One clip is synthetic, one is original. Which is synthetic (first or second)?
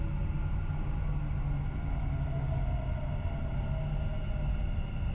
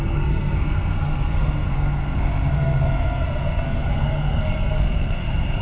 second